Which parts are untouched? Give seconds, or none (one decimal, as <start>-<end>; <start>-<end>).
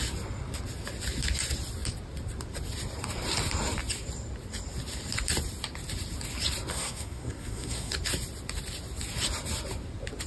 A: 0.0-6.7; 7.9-10.3